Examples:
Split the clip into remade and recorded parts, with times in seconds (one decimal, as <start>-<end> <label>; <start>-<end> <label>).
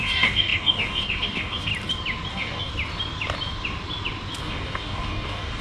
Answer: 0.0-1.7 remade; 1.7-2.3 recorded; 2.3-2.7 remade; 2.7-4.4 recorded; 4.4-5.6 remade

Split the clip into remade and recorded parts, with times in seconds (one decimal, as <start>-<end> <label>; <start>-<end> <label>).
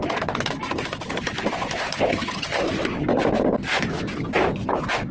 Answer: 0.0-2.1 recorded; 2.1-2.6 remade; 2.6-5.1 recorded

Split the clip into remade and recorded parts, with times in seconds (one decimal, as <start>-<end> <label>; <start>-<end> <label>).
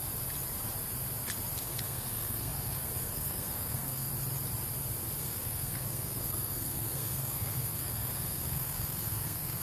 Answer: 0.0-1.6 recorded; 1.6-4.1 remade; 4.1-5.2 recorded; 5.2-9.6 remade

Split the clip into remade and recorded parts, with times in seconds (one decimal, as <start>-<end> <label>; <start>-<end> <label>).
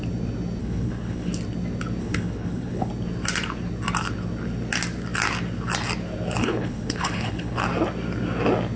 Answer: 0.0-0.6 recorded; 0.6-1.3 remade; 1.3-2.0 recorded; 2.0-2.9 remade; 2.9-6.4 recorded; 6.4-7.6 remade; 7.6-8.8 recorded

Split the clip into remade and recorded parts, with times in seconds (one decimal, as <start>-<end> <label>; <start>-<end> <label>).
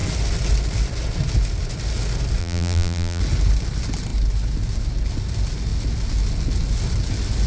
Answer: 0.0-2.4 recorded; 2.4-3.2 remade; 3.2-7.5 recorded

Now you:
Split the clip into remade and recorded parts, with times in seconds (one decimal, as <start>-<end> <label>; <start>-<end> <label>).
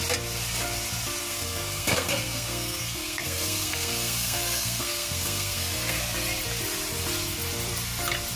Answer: 0.0-1.2 recorded; 1.2-6.0 remade; 6.0-8.4 recorded